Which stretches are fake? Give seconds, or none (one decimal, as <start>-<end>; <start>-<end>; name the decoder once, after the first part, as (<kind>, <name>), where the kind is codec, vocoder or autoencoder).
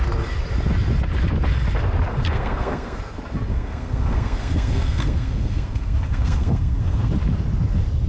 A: 2.1-3.0 (codec, SNAC); 3.5-7.1